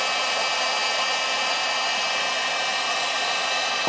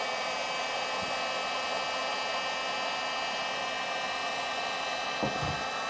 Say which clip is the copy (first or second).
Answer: first